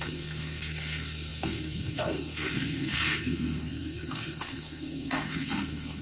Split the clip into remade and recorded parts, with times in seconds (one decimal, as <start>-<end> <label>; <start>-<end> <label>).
0.0-6.0 remade